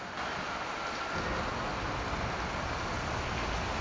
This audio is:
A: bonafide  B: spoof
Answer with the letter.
A